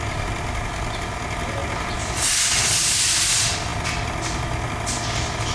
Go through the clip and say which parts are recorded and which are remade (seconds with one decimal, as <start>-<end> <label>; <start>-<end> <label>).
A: 0.0-5.5 recorded